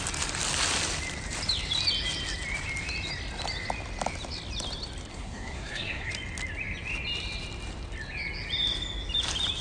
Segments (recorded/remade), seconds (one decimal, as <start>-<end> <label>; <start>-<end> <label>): 0.0-5.1 recorded; 5.1-6.1 remade; 6.1-9.6 recorded